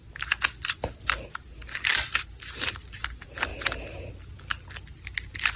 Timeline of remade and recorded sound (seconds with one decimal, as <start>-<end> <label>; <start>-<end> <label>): 0.0-5.6 recorded